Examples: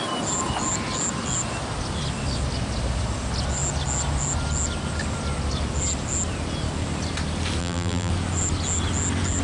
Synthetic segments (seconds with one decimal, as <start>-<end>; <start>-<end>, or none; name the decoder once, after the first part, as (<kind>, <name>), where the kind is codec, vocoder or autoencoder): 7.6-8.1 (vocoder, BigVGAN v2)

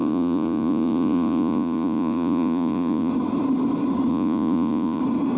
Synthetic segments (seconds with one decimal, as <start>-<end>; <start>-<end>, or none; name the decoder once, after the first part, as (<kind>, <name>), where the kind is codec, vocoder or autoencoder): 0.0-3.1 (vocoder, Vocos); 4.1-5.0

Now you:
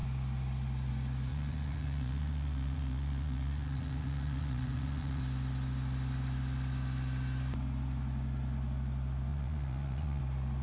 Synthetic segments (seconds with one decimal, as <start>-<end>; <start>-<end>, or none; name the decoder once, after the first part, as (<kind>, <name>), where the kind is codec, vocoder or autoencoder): 1.3-5.2 (vocoder, Vocos); 9.3-10.2